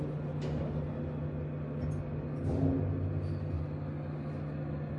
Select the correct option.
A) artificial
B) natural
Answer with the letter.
B